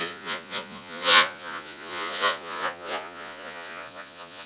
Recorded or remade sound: remade